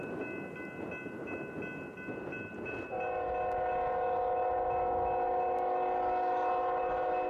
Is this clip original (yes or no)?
yes